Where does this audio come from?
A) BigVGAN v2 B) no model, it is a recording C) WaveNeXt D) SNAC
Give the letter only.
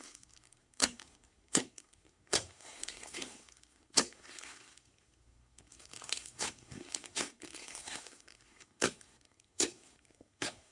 D